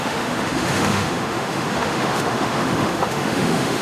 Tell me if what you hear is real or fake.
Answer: fake